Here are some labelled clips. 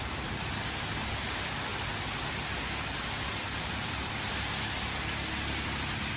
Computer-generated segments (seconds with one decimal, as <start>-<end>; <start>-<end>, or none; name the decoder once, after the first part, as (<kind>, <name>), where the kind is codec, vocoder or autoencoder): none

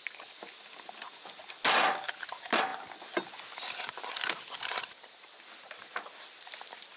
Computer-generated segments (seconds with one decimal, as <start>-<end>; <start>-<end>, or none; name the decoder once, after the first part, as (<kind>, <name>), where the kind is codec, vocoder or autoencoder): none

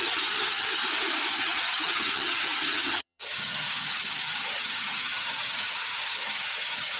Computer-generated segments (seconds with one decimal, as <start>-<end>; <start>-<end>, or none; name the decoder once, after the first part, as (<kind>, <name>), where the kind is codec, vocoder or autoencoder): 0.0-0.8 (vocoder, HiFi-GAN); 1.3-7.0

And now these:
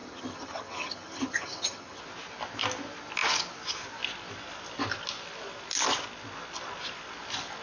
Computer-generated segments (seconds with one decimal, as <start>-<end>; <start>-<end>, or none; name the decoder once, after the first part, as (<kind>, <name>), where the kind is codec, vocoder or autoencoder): 0.0-2.0 (vocoder, HiFi-GAN)

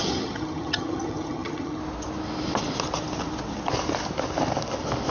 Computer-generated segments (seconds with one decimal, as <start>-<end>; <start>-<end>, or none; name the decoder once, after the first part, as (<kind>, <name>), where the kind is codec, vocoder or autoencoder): 0.0-1.8 (vocoder, HiFi-GAN)